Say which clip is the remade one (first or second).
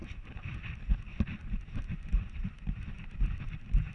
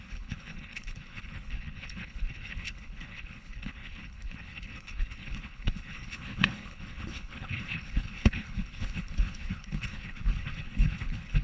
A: second